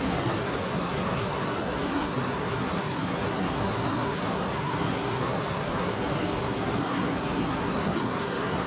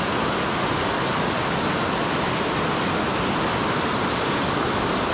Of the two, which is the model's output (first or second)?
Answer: first